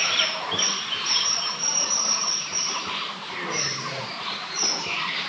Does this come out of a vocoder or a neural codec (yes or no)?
yes